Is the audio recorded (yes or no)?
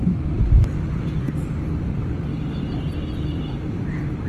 yes